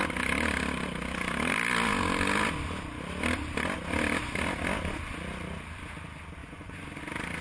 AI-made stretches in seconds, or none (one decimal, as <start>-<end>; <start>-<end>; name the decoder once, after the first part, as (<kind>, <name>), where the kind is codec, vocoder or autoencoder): 6.4-7.0 (vocoder, Vocos)